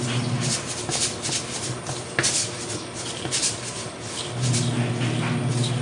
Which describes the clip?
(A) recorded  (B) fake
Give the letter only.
A